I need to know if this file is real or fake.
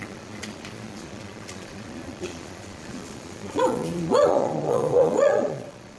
fake